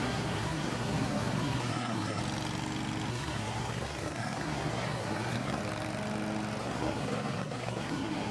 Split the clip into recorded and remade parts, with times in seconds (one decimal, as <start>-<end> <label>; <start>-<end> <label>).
0.0-2.2 remade; 2.2-3.1 recorded; 3.1-5.6 remade; 5.6-6.6 recorded; 6.6-8.3 remade